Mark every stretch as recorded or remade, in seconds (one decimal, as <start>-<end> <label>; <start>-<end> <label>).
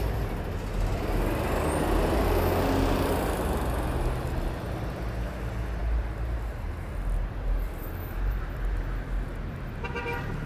0.0-5.8 recorded; 5.8-8.8 remade; 8.8-10.5 recorded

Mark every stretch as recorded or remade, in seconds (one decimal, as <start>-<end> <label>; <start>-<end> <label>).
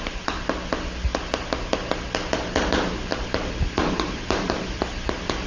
0.0-3.1 recorded; 3.1-4.8 remade; 4.8-5.5 recorded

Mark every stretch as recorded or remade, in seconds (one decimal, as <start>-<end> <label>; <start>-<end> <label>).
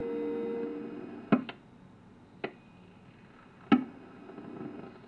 0.0-5.1 recorded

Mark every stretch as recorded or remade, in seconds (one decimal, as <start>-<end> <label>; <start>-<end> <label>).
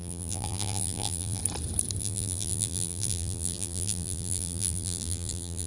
0.0-1.4 remade; 1.4-2.0 recorded; 2.0-5.7 remade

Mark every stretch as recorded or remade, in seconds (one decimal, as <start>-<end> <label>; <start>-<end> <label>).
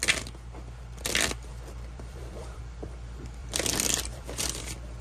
0.0-1.5 recorded; 1.5-2.6 remade; 2.6-3.4 recorded; 3.4-4.6 remade; 4.6-5.0 recorded